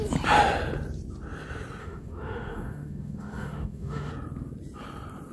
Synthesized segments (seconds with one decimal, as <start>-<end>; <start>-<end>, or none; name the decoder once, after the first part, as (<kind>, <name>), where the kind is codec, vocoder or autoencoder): 1.8-4.1 (autoencoder, DAC-VAE)